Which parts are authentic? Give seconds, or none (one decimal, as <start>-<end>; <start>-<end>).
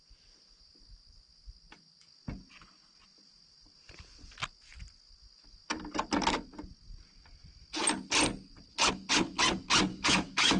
0.0-9.9